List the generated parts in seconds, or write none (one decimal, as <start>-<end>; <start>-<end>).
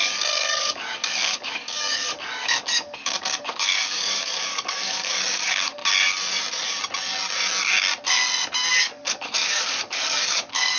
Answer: 0.0-5.8; 8.7-10.8